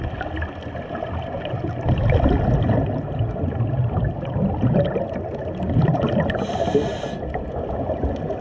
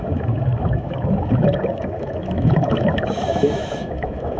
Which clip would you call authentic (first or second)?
first